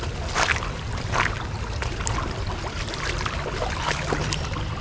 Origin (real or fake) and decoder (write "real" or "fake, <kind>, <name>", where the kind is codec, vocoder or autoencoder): real